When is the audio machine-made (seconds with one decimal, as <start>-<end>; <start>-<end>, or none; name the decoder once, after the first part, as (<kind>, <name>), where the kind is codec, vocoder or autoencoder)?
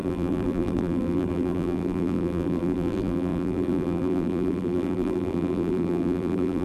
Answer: 0.0-6.6 (vocoder, BigVGAN v2)